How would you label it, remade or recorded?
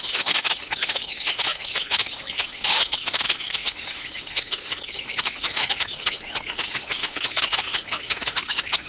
remade